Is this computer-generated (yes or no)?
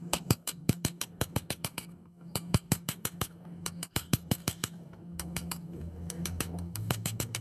yes